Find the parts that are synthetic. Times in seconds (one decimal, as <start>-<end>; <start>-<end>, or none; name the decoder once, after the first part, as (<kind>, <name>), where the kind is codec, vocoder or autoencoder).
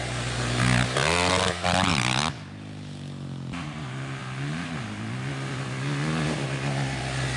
none